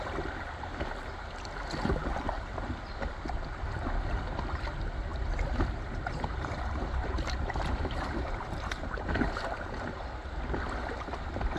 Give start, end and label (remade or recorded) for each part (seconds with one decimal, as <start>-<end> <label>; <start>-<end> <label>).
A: 0.0-5.1 recorded; 5.1-9.6 remade; 9.6-11.6 recorded